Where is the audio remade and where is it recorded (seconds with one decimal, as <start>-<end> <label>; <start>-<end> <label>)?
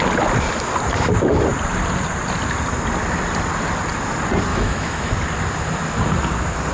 0.0-4.5 recorded; 4.5-5.1 remade; 5.1-6.7 recorded